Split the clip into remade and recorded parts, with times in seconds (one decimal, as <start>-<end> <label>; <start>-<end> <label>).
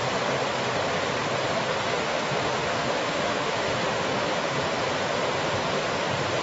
0.0-1.9 recorded; 1.9-4.3 remade; 4.3-6.4 recorded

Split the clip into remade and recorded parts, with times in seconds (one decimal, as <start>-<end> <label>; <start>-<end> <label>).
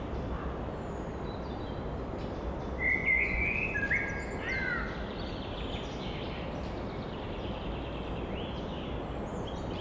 0.0-3.0 recorded; 3.0-3.7 remade; 3.7-9.8 recorded